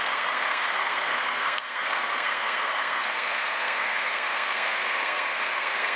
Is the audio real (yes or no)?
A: no